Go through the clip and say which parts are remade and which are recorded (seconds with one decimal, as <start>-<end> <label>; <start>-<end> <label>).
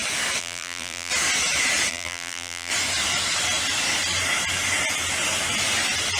0.0-0.4 recorded; 0.4-1.1 remade; 1.1-1.9 recorded; 1.9-2.7 remade; 2.7-6.2 recorded